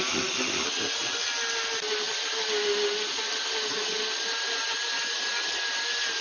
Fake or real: real